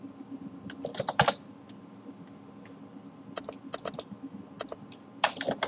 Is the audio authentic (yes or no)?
yes